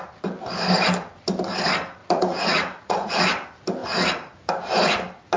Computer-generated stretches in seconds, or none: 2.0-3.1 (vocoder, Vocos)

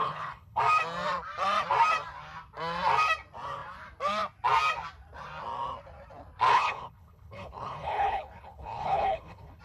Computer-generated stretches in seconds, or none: 0.0-0.6 (codec, HILCodec); 6.5-9.6

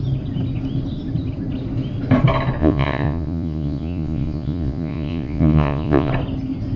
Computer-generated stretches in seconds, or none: 2.6-6.1 (vocoder, Vocos)

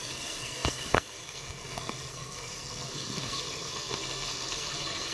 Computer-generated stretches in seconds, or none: 0.0-5.1 (codec, SNAC)

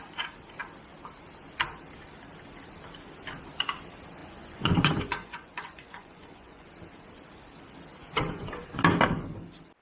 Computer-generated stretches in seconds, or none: 4.2-6.7 (vocoder, Vocos); 8.0-8.8